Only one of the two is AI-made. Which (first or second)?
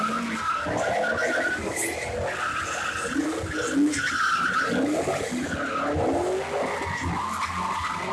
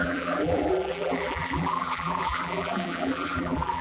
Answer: second